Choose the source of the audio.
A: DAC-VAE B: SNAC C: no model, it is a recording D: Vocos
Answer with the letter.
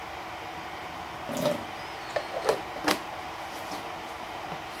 C